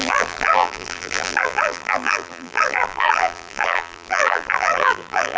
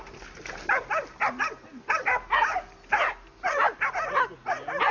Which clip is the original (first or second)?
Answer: second